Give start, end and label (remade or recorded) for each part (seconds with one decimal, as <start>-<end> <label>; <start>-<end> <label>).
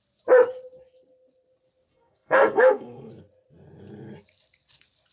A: 0.0-1.9 recorded; 1.9-3.1 remade; 3.1-5.1 recorded